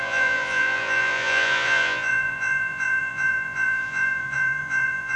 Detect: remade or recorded remade